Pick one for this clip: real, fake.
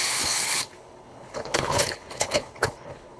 fake